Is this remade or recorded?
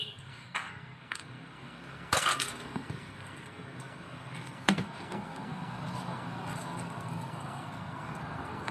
remade